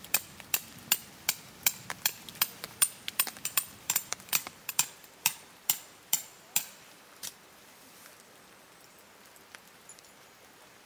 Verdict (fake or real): fake